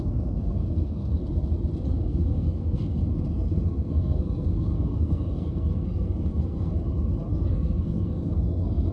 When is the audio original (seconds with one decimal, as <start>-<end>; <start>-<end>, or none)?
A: 1.2-1.9; 6.7-7.3